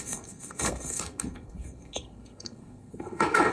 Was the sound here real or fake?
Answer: fake